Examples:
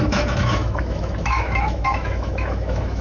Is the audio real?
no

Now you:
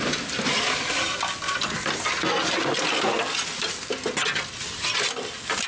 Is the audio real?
yes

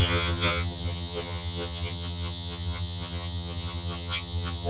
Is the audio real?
no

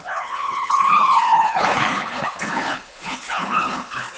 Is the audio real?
no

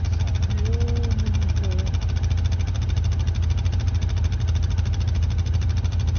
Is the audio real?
yes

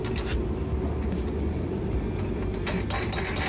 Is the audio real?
yes